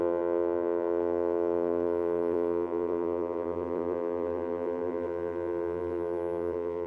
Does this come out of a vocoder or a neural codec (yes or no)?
yes